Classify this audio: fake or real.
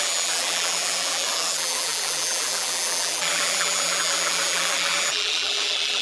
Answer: fake